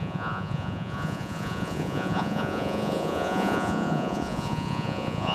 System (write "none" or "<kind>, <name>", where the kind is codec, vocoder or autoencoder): vocoder, Vocos